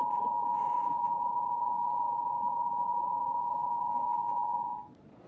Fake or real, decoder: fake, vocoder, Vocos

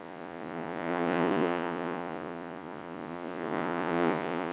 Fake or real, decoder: fake, vocoder, Vocos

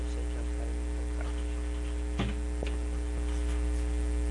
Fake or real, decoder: real